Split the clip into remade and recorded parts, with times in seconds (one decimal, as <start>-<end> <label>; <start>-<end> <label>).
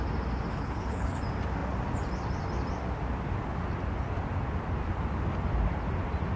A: 0.0-0.5 recorded; 0.5-1.2 remade; 1.2-6.4 recorded